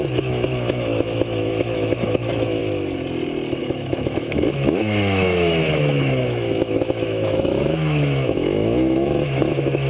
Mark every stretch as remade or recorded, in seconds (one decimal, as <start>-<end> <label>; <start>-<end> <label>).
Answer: 0.0-2.6 remade; 2.6-3.6 recorded; 3.6-9.9 remade